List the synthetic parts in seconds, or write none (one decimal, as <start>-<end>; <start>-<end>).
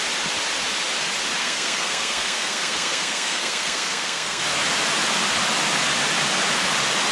1.4-4.4